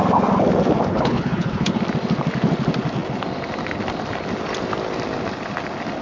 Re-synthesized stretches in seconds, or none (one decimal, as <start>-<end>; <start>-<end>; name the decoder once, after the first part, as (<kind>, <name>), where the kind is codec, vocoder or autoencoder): 0.9-1.8 (codec, HILCodec)